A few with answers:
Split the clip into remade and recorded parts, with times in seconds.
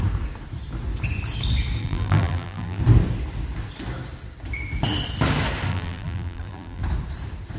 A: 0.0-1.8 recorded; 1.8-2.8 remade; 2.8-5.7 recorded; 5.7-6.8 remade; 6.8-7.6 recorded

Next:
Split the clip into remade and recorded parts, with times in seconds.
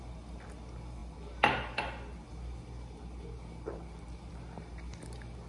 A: 0.0-5.5 recorded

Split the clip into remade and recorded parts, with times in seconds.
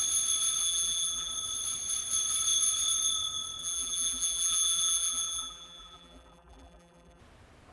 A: 0.0-0.6 recorded; 0.6-1.3 remade; 1.3-3.6 recorded; 3.6-7.2 remade; 7.2-7.7 recorded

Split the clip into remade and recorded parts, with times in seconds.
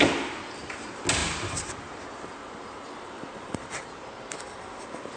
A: 0.0-1.2 recorded; 1.2-4.3 remade; 4.3-5.2 recorded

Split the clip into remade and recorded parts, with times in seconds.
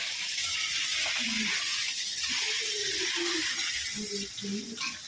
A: 0.0-0.9 recorded; 0.9-1.6 remade; 1.6-2.8 recorded; 2.8-3.5 remade; 3.5-5.1 recorded